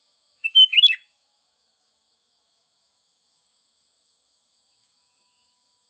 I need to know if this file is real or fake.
fake